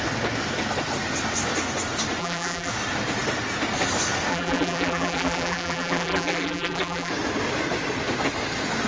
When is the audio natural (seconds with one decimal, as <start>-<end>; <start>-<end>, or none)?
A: 0.0-2.2; 2.7-4.3; 7.1-8.9